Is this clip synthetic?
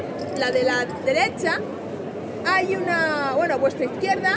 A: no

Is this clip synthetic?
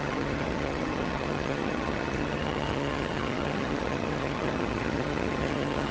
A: yes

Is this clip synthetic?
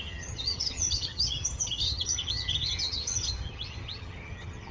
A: yes